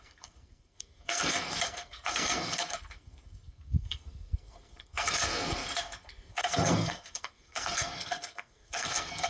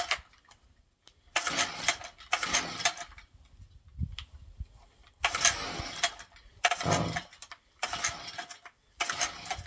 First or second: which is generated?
first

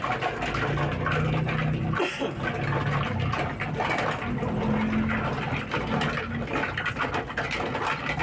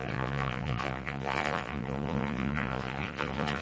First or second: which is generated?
second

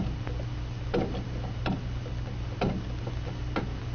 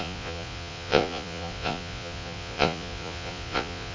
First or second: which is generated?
second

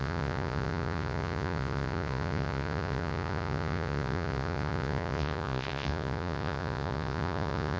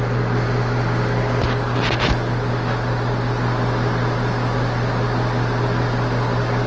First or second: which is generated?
first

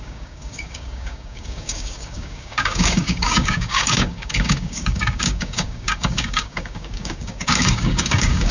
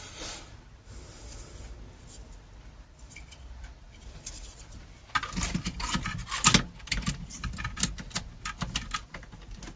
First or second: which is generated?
first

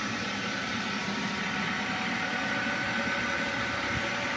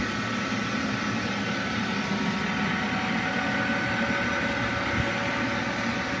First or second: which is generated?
first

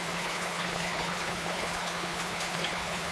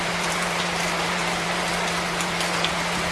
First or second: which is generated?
first